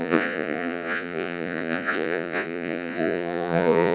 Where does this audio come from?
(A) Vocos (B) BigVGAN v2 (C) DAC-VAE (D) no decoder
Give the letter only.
A